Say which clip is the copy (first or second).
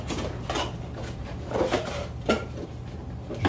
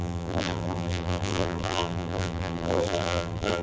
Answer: second